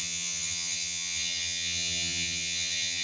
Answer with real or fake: fake